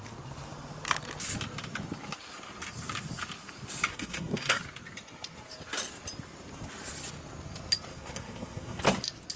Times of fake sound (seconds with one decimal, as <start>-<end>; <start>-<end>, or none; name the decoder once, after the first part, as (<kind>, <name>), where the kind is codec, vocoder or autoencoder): 3.9-4.6 (codec, SNAC); 7.9-8.8